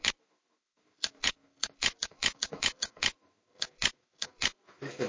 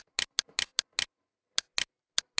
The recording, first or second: second